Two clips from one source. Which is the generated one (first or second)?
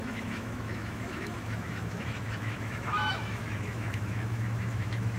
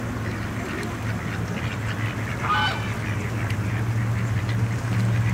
first